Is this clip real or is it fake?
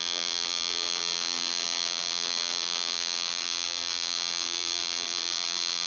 fake